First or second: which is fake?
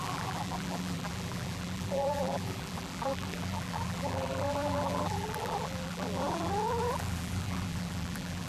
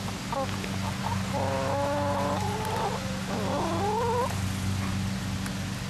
first